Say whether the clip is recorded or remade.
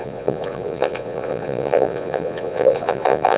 remade